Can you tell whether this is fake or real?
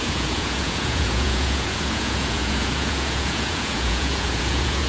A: fake